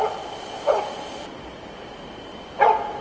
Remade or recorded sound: recorded